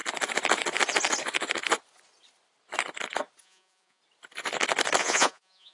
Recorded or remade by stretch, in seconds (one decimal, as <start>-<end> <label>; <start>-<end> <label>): 0.0-3.4 recorded; 3.4-4.0 remade; 4.0-5.0 recorded; 5.0-5.7 remade